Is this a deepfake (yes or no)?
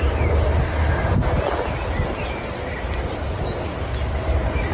no